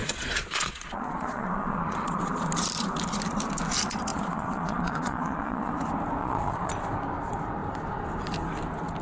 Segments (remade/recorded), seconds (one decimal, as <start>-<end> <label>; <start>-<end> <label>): 0.0-2.5 remade; 2.5-4.1 recorded; 4.1-5.7 remade; 5.7-6.2 recorded; 6.2-6.7 remade; 6.7-9.0 recorded